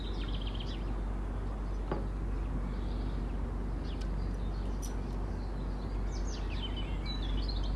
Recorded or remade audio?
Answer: recorded